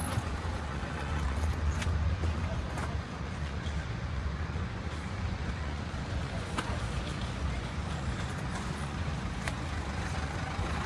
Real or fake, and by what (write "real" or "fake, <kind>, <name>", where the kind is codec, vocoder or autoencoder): fake, vocoder, Vocos